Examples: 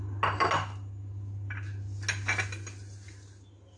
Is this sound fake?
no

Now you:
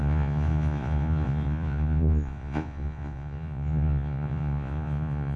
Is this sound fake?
yes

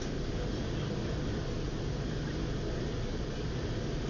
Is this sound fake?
no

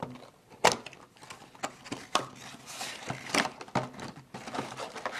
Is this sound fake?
no